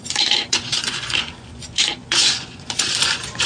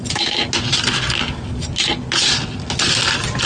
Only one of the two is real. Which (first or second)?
second